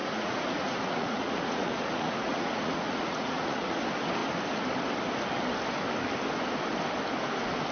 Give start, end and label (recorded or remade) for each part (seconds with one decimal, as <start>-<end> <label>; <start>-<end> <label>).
0.0-3.8 remade; 3.8-7.7 recorded